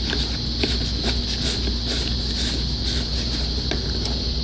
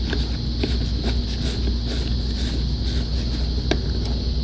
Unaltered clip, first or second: second